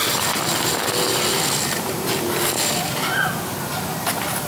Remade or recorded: recorded